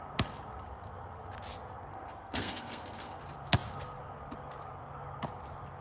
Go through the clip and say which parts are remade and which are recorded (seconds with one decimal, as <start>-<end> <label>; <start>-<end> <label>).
0.0-1.9 recorded; 1.9-3.2 remade; 3.2-5.8 recorded